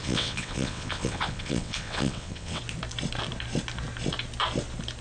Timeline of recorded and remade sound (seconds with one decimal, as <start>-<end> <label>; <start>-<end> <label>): 0.0-2.6 remade; 2.6-5.0 recorded